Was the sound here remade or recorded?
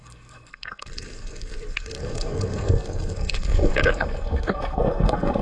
remade